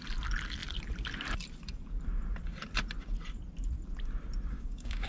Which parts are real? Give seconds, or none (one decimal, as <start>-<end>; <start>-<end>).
0.0-4.5